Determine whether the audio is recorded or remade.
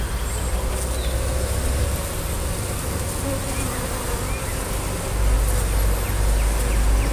recorded